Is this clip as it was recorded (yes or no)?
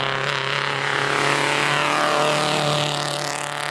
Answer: yes